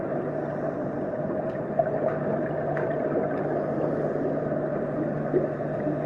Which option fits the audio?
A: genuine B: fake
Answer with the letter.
A